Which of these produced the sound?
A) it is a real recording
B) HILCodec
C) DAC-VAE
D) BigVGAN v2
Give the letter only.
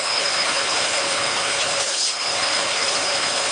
B